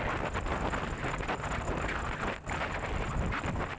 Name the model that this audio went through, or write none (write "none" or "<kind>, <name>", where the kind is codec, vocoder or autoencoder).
none